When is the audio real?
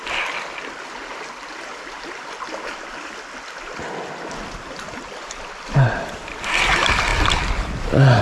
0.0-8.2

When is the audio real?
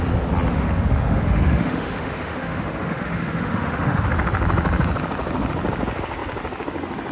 0.0-0.5; 4.1-7.1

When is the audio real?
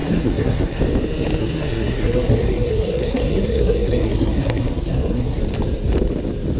0.8-1.4; 5.4-6.6